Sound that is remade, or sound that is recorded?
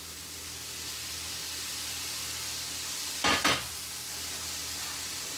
recorded